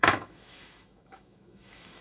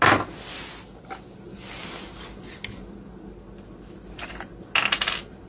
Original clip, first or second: second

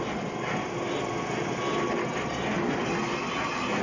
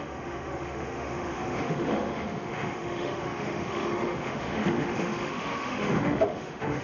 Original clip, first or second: first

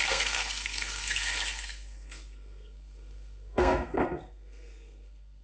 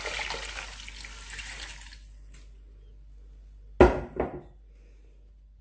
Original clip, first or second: second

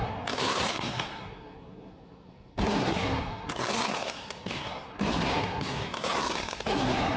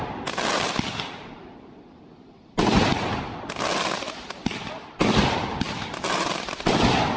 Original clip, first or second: second